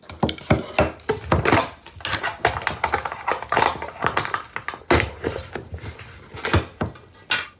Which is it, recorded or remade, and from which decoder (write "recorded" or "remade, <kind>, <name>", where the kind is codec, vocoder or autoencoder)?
recorded